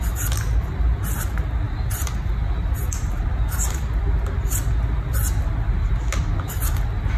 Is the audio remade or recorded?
recorded